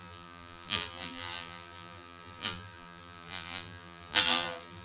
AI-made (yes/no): yes